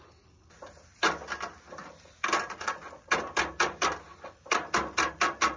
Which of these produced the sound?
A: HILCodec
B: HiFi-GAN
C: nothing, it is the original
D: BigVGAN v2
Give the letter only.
C